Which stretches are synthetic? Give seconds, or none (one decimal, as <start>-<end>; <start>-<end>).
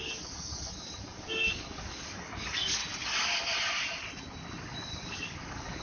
0.0-2.8; 4.6-5.8